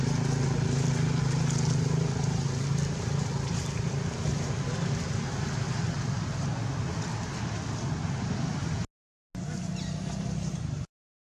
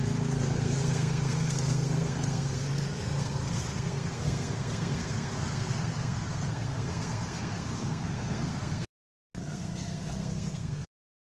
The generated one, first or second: second